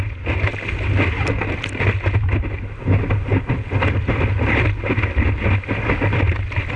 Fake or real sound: real